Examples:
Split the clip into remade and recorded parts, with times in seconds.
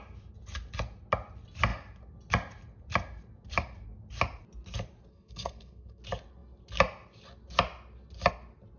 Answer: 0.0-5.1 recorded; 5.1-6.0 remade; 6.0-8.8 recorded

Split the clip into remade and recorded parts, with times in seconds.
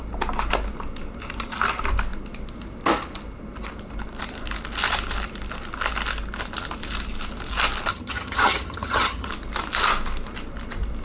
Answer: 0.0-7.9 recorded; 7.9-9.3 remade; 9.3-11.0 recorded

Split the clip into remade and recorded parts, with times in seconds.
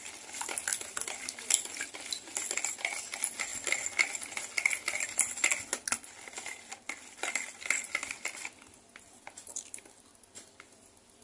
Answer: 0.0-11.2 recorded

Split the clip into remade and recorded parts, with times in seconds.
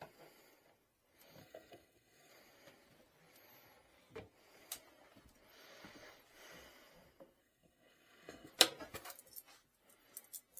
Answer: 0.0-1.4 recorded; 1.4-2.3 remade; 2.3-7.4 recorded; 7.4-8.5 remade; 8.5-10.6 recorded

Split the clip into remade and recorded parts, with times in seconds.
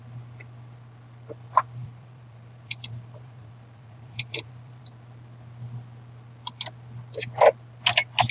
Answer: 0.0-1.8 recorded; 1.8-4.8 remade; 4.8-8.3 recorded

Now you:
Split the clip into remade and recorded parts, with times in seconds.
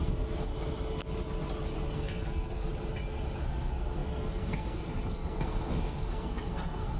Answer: 0.0-0.5 remade; 0.5-1.9 recorded; 1.9-2.7 remade; 2.7-3.4 recorded; 3.4-7.0 remade